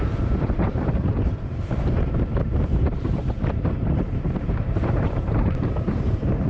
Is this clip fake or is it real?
fake